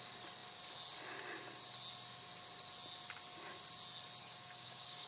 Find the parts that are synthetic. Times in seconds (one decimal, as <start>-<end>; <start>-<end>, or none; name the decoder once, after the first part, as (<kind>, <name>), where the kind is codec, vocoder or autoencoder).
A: 4.2-5.1 (codec, DAC)